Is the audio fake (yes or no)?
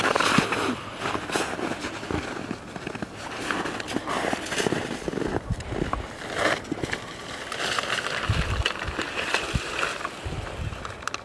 no